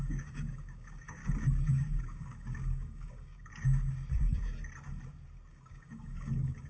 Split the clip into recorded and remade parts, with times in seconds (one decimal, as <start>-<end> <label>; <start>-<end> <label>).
0.0-1.2 remade; 1.2-2.0 recorded; 2.0-3.5 remade; 3.5-5.5 recorded; 5.5-6.7 remade